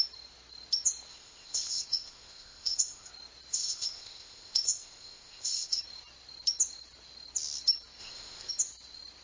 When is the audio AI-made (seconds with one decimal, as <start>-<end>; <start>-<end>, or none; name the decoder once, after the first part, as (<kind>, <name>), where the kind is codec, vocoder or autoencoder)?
1.1-3.1 (codec, ZipCodec); 3.5-5.8; 8.0-8.5